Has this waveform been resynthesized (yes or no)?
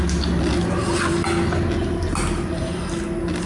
no